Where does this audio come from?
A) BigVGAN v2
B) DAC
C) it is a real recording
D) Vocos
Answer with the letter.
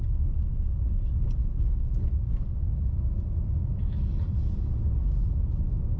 C